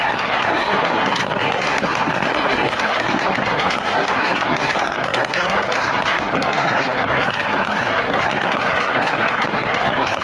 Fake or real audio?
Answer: fake